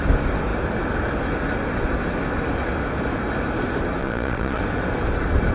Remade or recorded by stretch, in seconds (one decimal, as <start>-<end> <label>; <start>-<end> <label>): 0.0-4.0 recorded; 4.0-4.6 remade; 4.6-5.5 recorded